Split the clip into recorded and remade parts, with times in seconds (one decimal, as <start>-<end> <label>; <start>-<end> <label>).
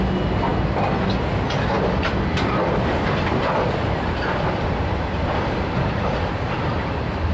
0.0-7.3 recorded